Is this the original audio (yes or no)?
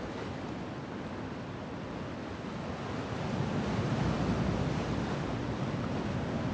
yes